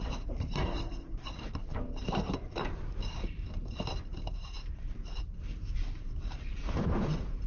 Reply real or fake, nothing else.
fake